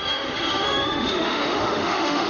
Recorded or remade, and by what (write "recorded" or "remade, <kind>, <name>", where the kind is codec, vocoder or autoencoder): remade, autoencoder, DAC-VAE